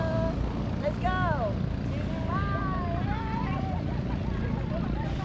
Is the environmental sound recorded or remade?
recorded